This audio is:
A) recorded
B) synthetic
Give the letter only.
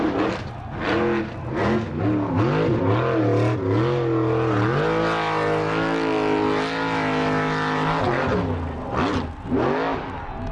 A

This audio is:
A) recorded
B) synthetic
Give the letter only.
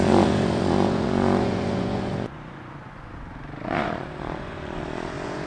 B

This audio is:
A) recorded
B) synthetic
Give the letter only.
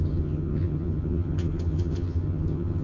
B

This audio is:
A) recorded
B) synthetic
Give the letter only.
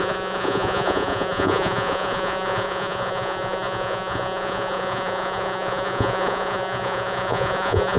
B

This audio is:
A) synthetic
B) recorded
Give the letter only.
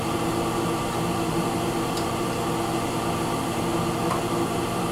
B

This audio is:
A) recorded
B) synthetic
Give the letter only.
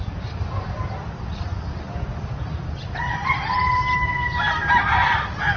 A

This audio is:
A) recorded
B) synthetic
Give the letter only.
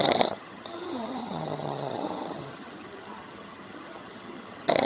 B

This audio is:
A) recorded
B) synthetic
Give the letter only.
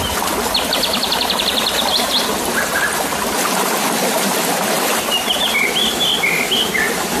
A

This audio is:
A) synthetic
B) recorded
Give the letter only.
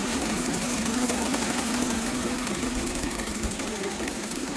A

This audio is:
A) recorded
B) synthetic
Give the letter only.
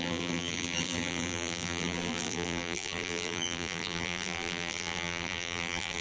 B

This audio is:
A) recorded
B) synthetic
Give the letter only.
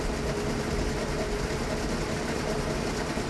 A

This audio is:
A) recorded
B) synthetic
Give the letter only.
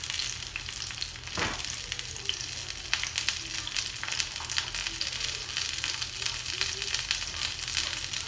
A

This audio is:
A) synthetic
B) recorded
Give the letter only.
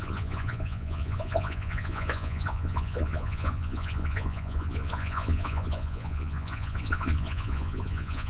A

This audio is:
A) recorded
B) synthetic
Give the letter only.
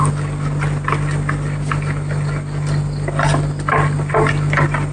A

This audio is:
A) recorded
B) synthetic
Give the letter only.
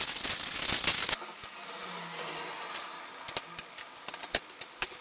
A